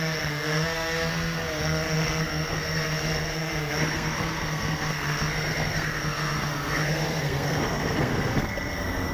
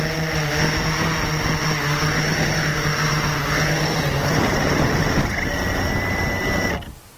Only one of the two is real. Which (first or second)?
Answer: second